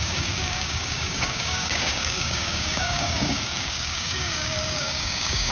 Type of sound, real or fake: fake